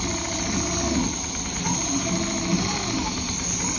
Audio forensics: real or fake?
real